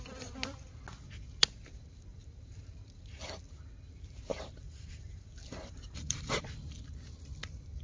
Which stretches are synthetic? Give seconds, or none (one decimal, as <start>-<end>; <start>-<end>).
2.1-3.2; 4.3-6.4